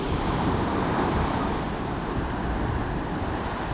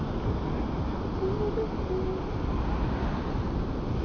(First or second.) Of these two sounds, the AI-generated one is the first